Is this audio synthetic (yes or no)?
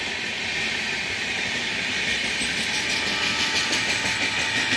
no